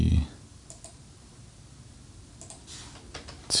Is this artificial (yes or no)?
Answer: no